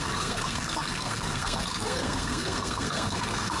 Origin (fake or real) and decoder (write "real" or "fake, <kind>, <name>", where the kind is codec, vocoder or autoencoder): fake, codec, SNAC